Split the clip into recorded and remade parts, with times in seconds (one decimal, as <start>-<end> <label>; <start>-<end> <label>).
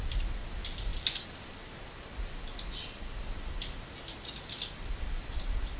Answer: 0.0-5.8 recorded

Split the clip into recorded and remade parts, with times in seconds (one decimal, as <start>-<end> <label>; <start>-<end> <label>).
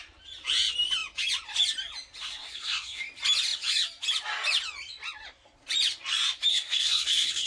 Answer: 0.0-2.2 recorded; 2.2-3.0 remade; 3.0-6.5 recorded; 6.5-7.5 remade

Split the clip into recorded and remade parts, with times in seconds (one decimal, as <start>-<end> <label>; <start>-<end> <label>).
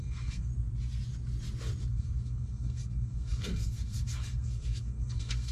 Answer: 0.0-0.5 remade; 0.5-1.9 recorded; 1.9-5.5 remade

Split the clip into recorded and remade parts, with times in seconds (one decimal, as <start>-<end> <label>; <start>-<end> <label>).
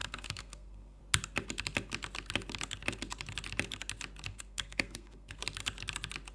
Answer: 0.0-1.0 remade; 1.0-4.3 recorded; 4.3-5.4 remade; 5.4-6.3 recorded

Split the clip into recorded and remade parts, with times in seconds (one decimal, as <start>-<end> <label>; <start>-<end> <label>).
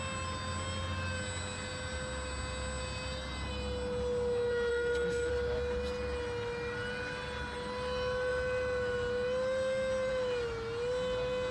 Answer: 0.0-4.7 recorded; 4.7-5.3 remade; 5.3-11.5 recorded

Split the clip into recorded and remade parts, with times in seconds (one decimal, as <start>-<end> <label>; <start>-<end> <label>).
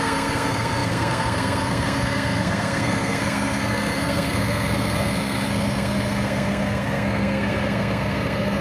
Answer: 0.0-8.6 remade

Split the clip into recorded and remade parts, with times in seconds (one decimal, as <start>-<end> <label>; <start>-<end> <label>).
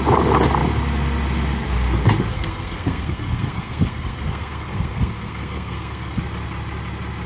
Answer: 0.0-2.3 recorded; 2.3-6.2 remade; 6.2-7.3 recorded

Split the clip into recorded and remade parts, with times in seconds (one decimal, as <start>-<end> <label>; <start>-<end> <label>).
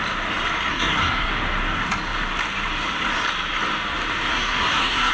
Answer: 0.0-0.7 recorded; 0.7-1.3 remade; 1.3-4.3 recorded; 4.3-5.1 remade